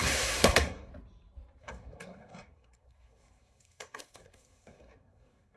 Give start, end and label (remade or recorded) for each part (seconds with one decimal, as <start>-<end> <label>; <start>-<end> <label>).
0.0-0.9 remade; 0.9-1.6 recorded; 1.6-5.6 remade